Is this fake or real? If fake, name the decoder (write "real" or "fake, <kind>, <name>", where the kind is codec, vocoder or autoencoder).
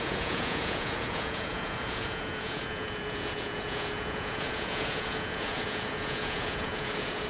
fake, vocoder, Vocos